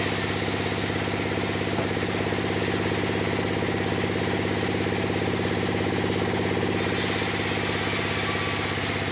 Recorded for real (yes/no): yes